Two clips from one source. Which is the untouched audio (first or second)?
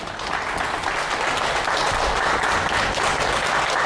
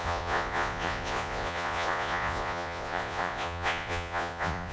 first